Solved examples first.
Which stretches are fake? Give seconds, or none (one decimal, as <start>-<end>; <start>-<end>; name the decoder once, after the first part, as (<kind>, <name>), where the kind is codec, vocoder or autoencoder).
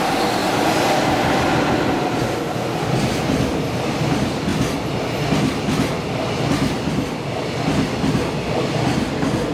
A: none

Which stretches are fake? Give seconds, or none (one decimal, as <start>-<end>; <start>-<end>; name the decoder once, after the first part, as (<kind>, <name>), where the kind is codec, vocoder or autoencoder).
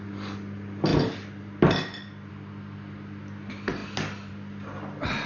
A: none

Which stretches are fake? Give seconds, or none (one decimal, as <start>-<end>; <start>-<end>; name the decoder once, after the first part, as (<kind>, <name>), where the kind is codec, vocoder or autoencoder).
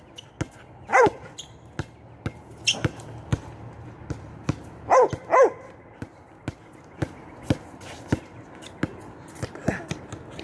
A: 0.9-1.5 (vocoder, BigVGAN v2); 3.3-4.0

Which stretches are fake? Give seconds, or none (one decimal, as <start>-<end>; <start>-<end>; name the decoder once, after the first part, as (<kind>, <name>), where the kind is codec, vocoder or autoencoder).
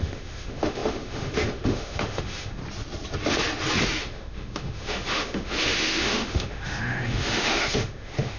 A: 0.0-2.6 (autoencoder, DAC-VAE); 4.0-8.4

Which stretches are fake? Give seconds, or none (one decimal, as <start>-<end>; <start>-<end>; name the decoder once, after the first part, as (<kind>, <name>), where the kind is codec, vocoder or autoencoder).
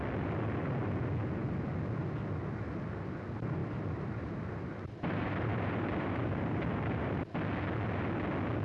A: 3.6-7.1 (vocoder, BigVGAN v2)